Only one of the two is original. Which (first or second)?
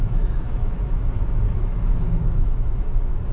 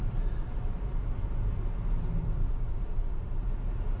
second